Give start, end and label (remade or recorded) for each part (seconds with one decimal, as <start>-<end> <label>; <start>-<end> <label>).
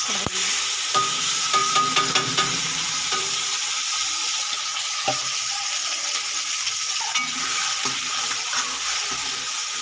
0.0-1.6 recorded; 1.6-6.9 remade; 6.9-7.5 recorded; 7.5-8.5 remade; 8.5-9.8 recorded